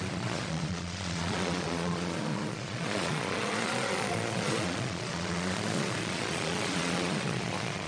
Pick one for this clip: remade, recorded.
remade